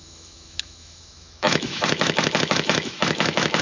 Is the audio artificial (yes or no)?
yes